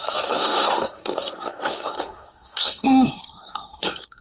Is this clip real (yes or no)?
no